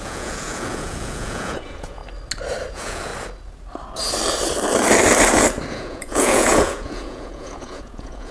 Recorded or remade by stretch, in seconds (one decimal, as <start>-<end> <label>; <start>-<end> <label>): 0.0-2.0 remade; 2.0-2.7 recorded; 2.7-3.1 remade; 3.1-5.7 recorded; 5.7-8.3 remade